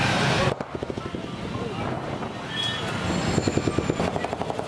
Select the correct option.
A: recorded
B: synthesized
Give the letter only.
A